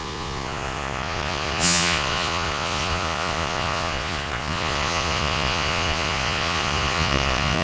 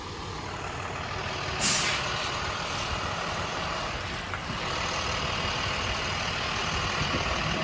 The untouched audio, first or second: second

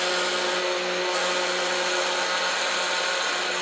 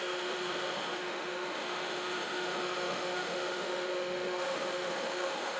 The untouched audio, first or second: first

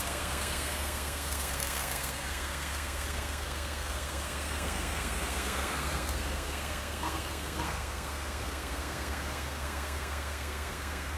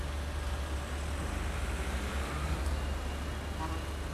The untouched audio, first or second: second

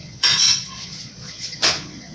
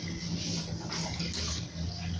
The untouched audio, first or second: second